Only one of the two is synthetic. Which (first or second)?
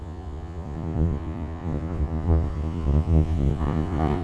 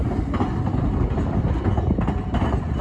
first